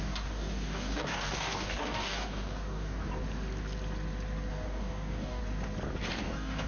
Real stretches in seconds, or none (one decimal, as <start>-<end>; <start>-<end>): 3.1-4.5; 5.4-6.1